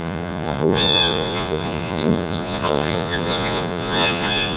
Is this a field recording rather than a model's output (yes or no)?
no